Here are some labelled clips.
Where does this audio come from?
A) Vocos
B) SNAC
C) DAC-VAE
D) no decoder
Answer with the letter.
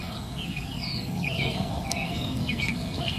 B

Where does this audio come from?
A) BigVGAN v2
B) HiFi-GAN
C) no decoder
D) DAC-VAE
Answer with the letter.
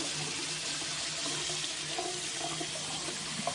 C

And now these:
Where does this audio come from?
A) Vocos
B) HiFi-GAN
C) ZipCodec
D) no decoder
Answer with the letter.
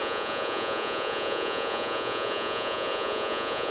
A